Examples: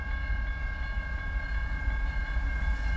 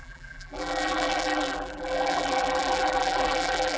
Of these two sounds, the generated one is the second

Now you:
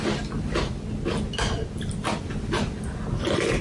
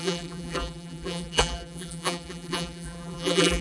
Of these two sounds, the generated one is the second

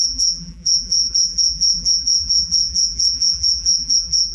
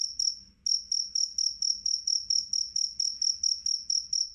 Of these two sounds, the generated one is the first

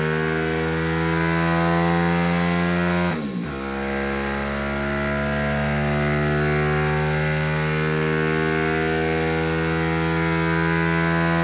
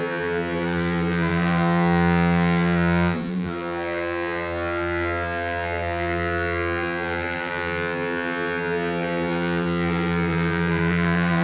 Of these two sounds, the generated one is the second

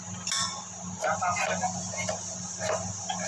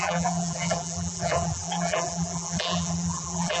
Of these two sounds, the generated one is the second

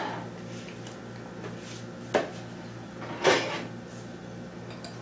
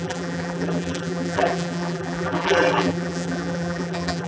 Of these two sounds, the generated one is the second